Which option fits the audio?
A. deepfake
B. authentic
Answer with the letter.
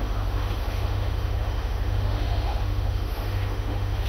A